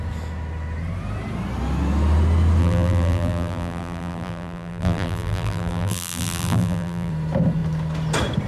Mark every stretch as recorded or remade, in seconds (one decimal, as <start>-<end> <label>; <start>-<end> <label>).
0.0-2.6 recorded; 2.6-7.1 remade; 7.1-8.5 recorded